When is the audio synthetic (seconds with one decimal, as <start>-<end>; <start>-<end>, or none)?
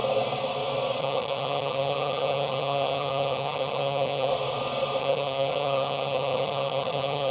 1.0-4.3; 5.0-7.3